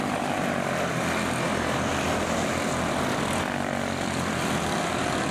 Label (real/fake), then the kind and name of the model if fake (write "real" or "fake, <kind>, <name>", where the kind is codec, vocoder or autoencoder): real